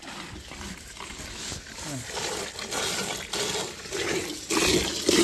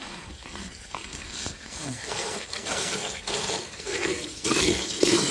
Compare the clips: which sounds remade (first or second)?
second